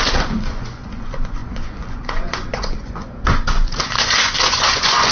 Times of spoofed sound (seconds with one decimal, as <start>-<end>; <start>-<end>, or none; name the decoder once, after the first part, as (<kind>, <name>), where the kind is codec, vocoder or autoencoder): 0.0-5.1 (vocoder, Vocos)